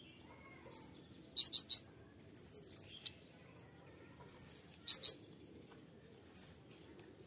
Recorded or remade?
recorded